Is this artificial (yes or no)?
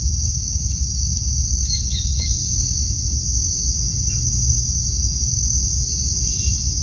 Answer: yes